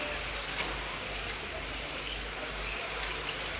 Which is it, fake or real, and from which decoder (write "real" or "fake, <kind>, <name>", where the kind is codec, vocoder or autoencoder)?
real